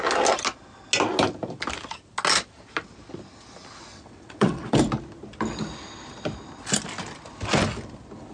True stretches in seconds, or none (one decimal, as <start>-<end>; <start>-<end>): 0.0-3.9; 4.8-8.3